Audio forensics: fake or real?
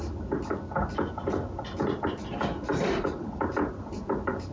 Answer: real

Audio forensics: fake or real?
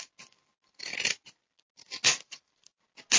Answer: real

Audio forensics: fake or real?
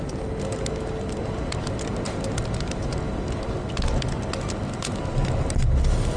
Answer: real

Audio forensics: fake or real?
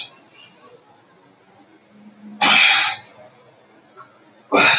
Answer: real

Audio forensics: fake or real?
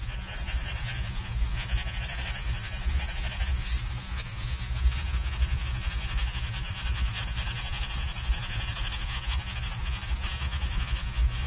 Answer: fake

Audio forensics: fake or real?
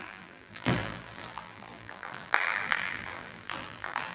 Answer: fake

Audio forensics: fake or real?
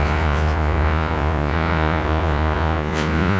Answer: fake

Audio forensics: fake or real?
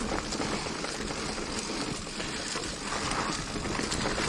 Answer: real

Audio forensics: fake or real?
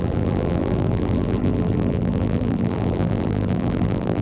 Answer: fake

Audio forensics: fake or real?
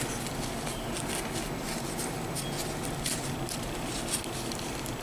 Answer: real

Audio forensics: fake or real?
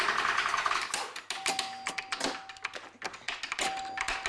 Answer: real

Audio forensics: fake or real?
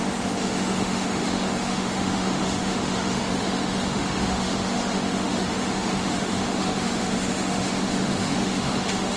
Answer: fake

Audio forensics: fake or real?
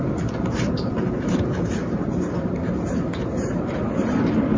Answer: fake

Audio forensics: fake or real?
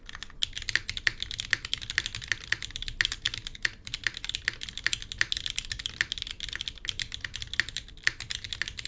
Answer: real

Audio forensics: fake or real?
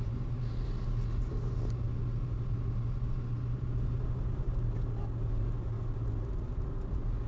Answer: real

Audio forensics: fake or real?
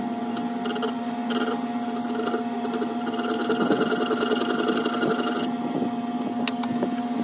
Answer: real